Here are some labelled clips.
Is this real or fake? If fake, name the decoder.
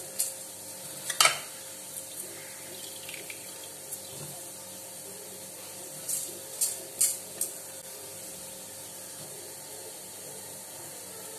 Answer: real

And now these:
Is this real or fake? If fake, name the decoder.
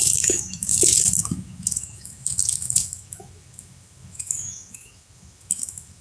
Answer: fake, autoencoder, DAC-VAE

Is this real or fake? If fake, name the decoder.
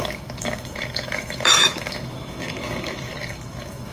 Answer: fake, autoencoder, DAC-VAE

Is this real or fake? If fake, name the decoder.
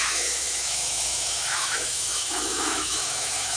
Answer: fake, autoencoder, DAC-VAE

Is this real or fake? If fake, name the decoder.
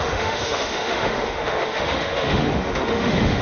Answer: fake, autoencoder, DAC-VAE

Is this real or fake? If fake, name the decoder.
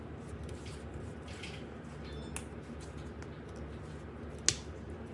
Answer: real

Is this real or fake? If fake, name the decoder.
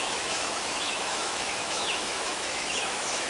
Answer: fake, autoencoder, DAC-VAE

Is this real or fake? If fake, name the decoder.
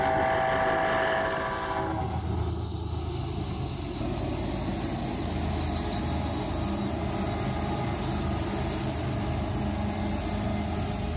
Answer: real